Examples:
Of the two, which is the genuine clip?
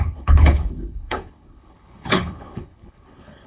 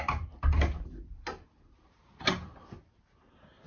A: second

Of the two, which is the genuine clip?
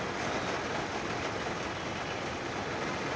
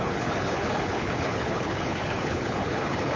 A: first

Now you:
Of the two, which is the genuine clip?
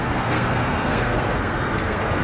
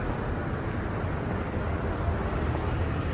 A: second